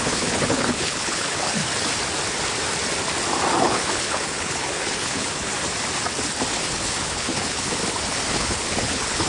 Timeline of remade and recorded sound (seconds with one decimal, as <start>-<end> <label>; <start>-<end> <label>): 0.0-1.6 remade; 1.6-3.6 recorded; 3.6-5.5 remade; 5.5-6.6 recorded; 6.6-7.8 remade; 7.8-8.3 recorded; 8.3-9.3 remade